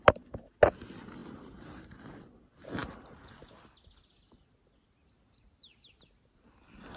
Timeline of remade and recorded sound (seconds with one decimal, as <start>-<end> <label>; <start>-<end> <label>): 0.0-7.0 recorded